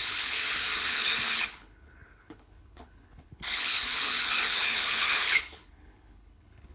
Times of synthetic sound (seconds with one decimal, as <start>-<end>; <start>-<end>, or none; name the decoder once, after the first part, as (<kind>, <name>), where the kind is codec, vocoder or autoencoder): 0.0-6.7 (codec, HILCodec)